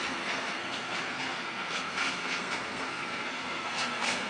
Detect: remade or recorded remade